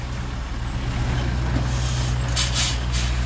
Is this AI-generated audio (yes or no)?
no